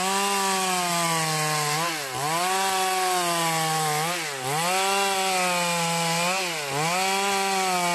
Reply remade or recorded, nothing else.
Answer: recorded